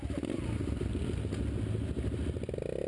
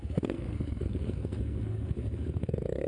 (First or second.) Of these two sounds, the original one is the first